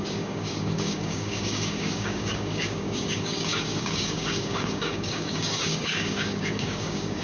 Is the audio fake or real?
fake